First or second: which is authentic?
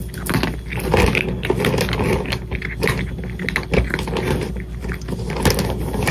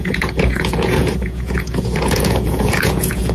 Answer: first